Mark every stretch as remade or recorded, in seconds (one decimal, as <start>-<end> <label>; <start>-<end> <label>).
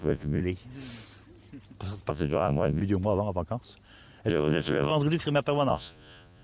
0.0-0.4 remade; 0.4-2.1 recorded; 2.1-2.8 remade; 2.8-4.3 recorded; 4.3-4.9 remade; 4.9-5.7 recorded; 5.7-6.4 remade